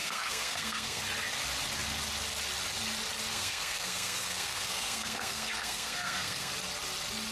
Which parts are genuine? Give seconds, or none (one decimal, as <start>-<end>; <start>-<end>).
1.0-3.3; 6.5-7.3